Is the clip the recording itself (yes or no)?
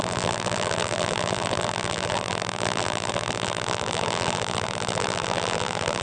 no